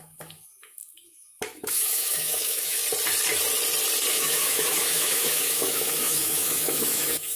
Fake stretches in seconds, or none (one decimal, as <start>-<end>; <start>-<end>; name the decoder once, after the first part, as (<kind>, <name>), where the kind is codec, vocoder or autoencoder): 0.0-2.8 (autoencoder, DAC-VAE); 4.1-7.4